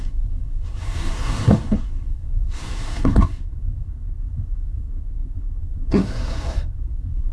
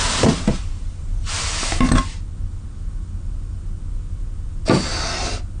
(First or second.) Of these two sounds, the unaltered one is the second